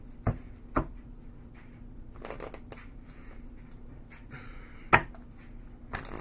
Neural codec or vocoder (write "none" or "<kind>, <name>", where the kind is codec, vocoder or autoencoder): none